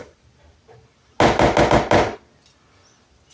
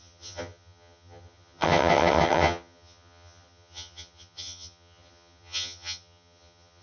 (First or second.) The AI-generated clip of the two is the second